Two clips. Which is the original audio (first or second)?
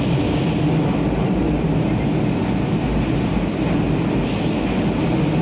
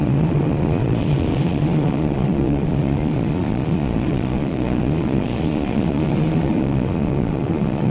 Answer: first